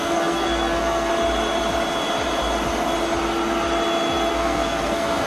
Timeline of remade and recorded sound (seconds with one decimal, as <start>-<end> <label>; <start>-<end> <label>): 0.0-1.1 remade; 1.1-4.3 recorded; 4.3-5.3 remade